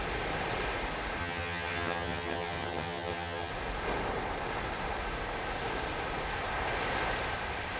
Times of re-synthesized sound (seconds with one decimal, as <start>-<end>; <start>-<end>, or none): 1.2-3.5